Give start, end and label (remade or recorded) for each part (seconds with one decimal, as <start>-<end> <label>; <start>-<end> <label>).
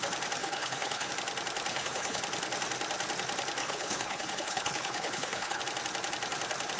0.0-0.4 recorded; 0.4-1.1 remade; 1.1-1.7 recorded; 1.7-2.2 remade; 2.2-3.6 recorded; 3.6-5.6 remade; 5.6-6.8 recorded